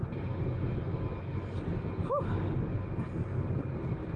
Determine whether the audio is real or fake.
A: real